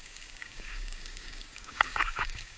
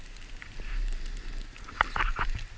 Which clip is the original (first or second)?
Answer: second